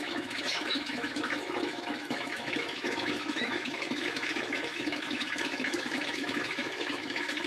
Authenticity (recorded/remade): remade